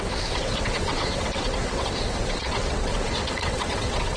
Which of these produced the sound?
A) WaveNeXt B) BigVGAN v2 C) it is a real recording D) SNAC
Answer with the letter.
A